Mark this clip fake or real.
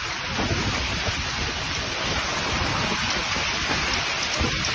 real